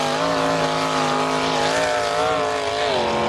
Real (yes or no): yes